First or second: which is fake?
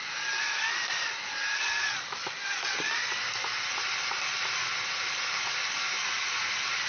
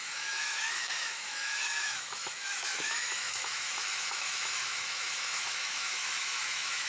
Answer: second